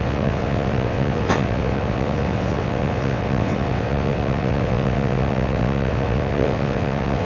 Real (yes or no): no